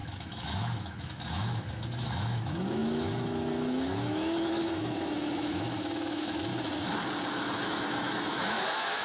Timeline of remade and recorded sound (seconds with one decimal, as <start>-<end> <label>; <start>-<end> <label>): 0.0-6.5 remade; 6.5-7.3 recorded; 7.3-9.0 remade